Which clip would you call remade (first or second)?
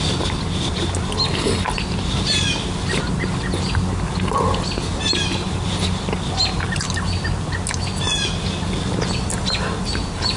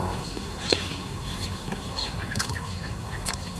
second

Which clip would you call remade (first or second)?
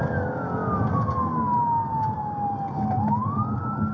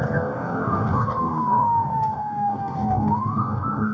second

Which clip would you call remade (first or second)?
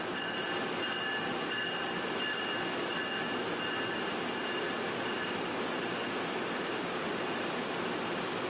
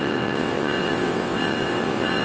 second